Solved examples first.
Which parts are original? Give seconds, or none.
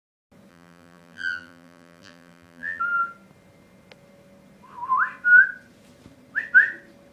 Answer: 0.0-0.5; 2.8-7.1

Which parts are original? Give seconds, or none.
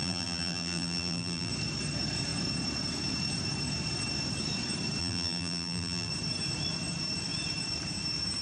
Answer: 1.5-5.0; 6.1-8.4